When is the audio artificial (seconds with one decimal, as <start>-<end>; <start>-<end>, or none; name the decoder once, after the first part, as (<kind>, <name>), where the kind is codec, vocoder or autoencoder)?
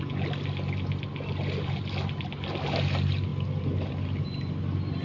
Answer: none